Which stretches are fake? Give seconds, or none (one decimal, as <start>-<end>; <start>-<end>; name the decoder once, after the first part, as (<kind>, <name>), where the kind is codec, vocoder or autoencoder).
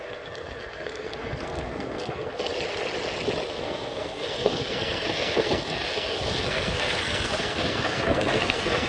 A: 0.0-2.5 (codec, SNAC); 3.5-8.9